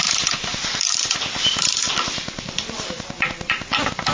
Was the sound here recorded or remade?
remade